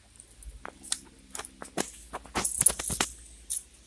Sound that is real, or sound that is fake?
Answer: real